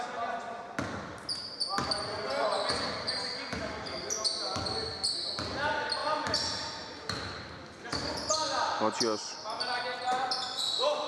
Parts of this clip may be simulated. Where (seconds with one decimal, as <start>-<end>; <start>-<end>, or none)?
none